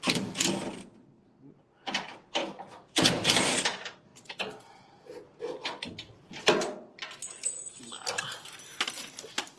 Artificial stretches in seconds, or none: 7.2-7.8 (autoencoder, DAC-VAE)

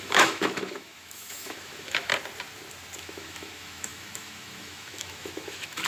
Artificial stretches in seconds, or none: 0.0-2.1 (autoencoder, DAC-VAE); 3.0-5.9

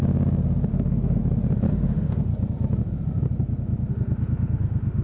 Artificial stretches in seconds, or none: 0.7-1.2 (autoencoder, DAC-VAE); 1.7-2.3; 3.9-5.0

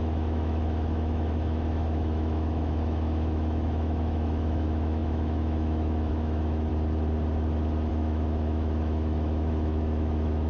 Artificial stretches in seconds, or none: 0.0-6.7 (autoencoder, DAC-VAE); 7.9-10.5

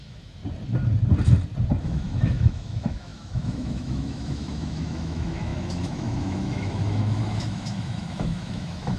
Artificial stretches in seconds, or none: 0.0-0.4 (autoencoder, DAC-VAE); 1.8-9.0

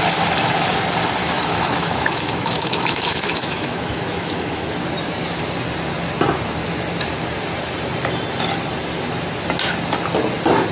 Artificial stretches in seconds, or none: 1.2-4.7 (autoencoder, DAC-VAE)

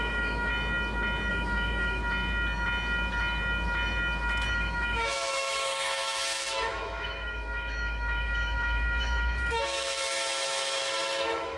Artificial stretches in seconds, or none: 0.0-0.5 (autoencoder, DAC-VAE); 1.3-2.0; 4.5-11.6